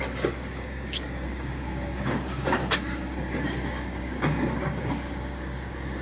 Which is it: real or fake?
fake